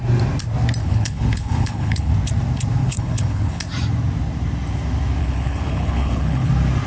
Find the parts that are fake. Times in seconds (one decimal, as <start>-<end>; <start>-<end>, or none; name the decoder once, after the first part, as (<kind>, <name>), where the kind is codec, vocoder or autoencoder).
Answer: 0.8-2.1 (codec, HILCodec); 2.8-3.6; 5.2-6.5